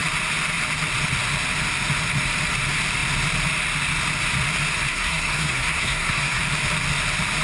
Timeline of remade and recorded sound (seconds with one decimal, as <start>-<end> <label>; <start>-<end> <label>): 0.0-4.9 recorded; 4.9-6.4 remade; 6.4-7.4 recorded